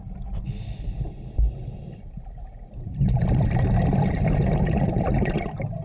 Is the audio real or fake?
real